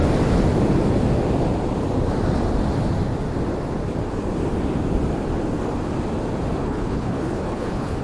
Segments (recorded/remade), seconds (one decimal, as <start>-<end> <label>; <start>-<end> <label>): 0.0-6.6 recorded; 6.6-8.0 remade